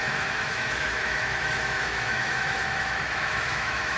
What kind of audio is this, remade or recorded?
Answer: remade